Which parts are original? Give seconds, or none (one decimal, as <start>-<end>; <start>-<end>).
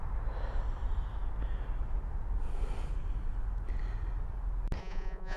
0.0-4.8